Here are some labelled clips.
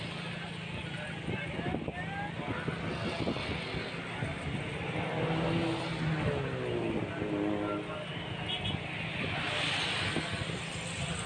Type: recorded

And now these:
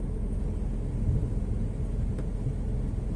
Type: recorded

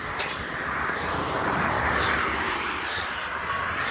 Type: recorded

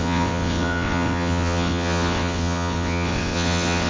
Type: remade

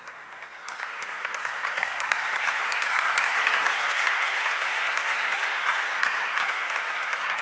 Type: remade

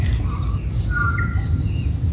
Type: recorded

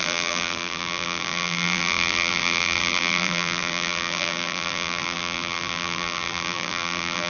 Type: remade